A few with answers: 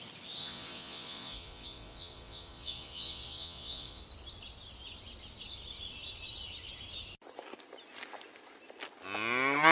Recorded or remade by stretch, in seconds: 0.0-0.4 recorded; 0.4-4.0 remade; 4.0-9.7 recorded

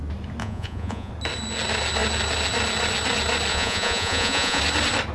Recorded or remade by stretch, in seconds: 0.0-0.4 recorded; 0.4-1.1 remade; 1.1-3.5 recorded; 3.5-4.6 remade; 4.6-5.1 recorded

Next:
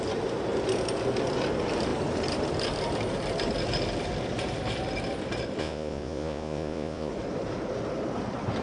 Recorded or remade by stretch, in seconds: 0.0-5.6 recorded; 5.6-7.1 remade; 7.1-8.6 recorded

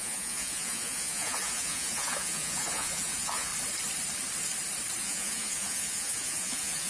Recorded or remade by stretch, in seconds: 0.0-3.5 remade; 3.5-5.0 recorded; 5.0-6.9 remade

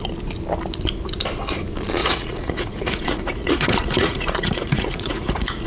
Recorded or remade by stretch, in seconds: 0.0-2.0 recorded; 2.0-5.7 remade

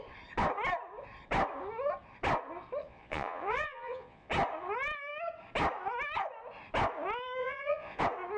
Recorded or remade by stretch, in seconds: 0.0-2.8 recorded; 2.8-4.3 remade; 4.3-7.4 recorded; 7.4-8.0 remade; 8.0-8.4 recorded

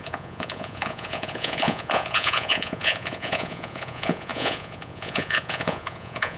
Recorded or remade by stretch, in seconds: 0.0-6.4 remade

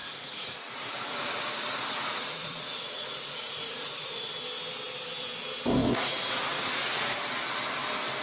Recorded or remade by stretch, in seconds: 0.0-4.3 remade; 4.3-5.8 recorded; 5.8-7.0 remade; 7.0-8.2 recorded